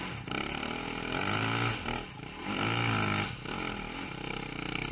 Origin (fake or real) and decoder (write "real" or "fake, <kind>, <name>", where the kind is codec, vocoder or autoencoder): real